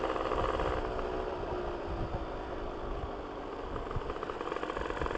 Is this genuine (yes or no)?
yes